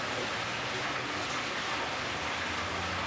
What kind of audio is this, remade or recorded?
recorded